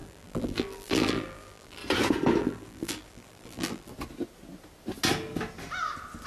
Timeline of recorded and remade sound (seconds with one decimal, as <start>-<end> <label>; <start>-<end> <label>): 0.0-1.8 remade; 1.8-2.4 recorded; 2.4-3.9 remade; 3.9-6.3 recorded